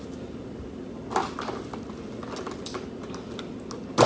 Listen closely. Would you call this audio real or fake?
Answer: real